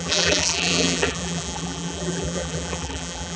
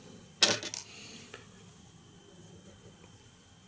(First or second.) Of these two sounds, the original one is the second